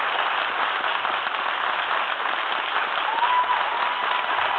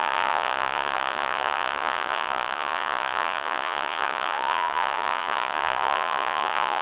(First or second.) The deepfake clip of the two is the second